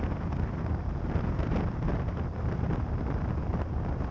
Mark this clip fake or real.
real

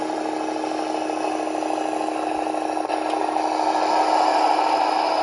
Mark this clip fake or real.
real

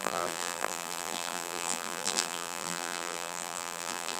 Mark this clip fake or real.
fake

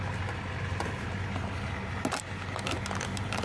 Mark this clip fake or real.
real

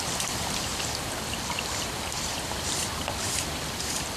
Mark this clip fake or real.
fake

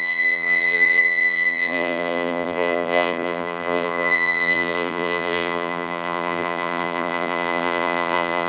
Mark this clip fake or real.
fake